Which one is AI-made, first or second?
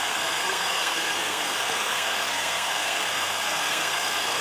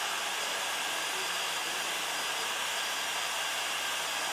first